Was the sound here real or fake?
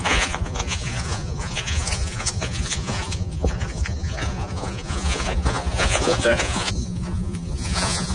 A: fake